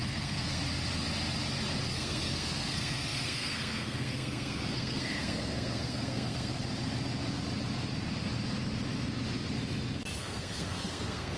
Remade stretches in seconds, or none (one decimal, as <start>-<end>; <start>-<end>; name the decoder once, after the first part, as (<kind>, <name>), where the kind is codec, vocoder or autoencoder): 0.0-0.6 (codec, SNAC); 1.9-6.5; 10.2-11.4